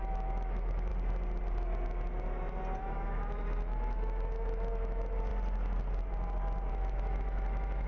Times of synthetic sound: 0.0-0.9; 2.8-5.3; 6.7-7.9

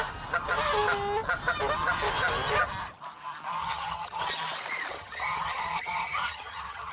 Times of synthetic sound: 3.6-4.3; 4.9-6.9

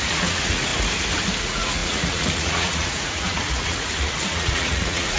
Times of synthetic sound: 0.0-0.7; 1.4-5.2